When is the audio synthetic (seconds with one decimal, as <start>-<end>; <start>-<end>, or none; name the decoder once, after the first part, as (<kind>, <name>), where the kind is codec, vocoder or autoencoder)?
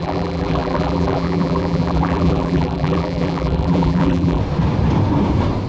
0.0-4.4 (vocoder, BigVGAN v2)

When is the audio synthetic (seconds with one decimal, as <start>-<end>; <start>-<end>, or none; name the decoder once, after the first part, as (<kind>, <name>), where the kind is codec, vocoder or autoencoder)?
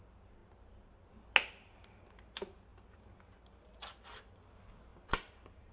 4.9-5.7 (vocoder, BigVGAN v2)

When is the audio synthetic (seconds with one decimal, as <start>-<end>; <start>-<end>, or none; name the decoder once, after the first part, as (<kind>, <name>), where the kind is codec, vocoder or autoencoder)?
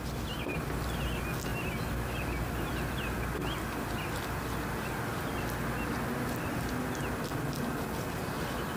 none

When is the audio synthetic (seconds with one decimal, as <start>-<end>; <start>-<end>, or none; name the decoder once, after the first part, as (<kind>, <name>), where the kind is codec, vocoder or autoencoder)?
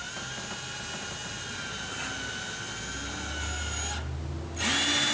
none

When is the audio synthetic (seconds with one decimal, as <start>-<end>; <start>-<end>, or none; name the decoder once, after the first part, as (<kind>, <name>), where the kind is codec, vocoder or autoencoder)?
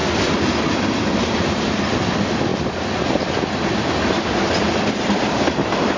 none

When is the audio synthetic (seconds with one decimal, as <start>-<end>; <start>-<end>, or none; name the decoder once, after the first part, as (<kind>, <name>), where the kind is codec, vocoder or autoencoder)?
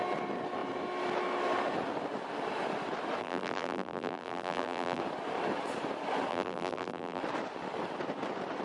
3.2-5.0 (vocoder, BigVGAN v2); 6.3-7.2